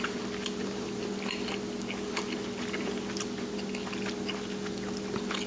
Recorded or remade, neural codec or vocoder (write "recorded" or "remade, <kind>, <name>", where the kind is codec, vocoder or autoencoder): recorded